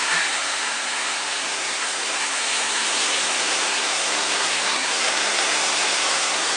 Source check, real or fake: fake